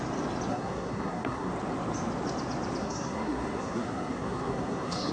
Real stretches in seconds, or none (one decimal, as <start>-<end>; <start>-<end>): 0.0-0.5; 1.5-2.8